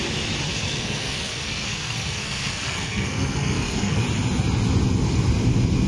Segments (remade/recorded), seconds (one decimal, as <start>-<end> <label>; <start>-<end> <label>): 0.0-0.5 recorded; 0.5-4.0 remade; 4.0-5.9 recorded